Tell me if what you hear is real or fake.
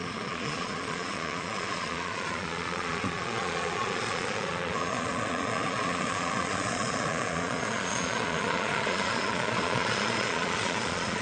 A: fake